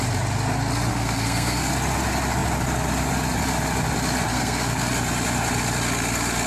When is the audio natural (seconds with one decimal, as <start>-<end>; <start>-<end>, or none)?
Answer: 0.0-0.9; 1.7-4.3; 4.9-6.5